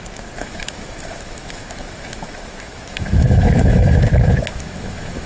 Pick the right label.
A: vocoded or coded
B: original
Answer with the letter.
A